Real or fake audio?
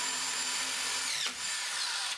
real